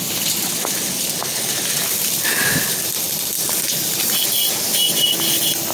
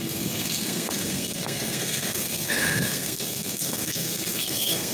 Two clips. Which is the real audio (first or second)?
first